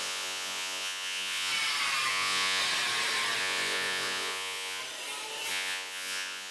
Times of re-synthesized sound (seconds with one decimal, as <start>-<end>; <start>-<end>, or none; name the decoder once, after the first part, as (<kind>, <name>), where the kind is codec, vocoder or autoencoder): 0.0-1.5 (vocoder, Vocos); 2.1-2.6; 3.4-4.8; 5.5-6.5